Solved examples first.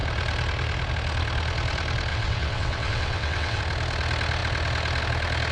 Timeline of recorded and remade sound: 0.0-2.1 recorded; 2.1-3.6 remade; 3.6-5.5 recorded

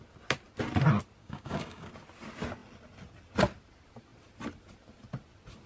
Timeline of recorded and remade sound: 0.0-1.2 recorded; 1.2-1.9 remade; 1.9-5.7 recorded

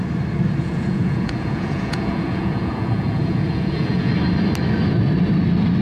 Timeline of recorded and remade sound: 0.0-0.6 recorded; 0.6-4.1 remade; 4.1-5.8 recorded

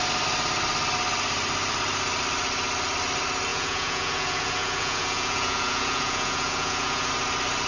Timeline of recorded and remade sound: 0.0-3.5 recorded; 3.5-7.1 remade; 7.1-7.7 recorded

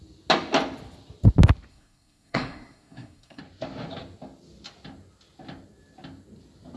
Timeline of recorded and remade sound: 0.0-1.7 recorded; 1.7-3.4 remade; 3.4-6.8 recorded

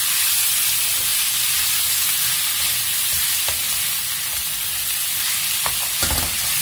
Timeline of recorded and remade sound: 0.0-6.6 recorded